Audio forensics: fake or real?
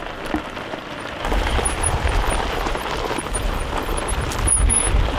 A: fake